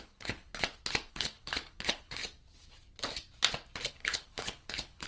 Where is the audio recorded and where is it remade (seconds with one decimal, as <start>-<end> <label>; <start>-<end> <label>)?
0.0-0.5 remade; 0.5-1.1 recorded; 1.1-2.2 remade; 2.2-3.9 recorded; 3.9-5.1 remade